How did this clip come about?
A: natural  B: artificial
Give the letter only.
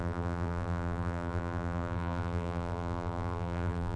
B